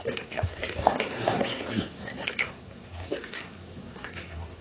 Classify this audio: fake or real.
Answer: fake